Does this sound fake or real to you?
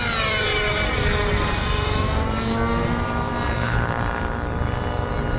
real